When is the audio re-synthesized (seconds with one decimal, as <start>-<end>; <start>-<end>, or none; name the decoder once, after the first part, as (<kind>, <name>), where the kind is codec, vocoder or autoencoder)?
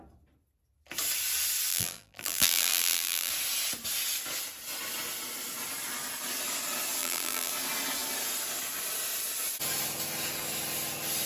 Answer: 1.7-3.3 (vocoder, BigVGAN v2); 7.0-7.5